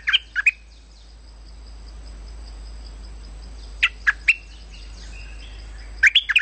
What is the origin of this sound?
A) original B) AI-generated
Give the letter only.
A